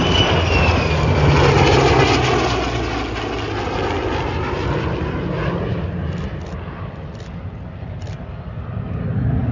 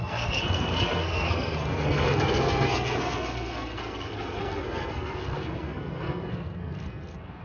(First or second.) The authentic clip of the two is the first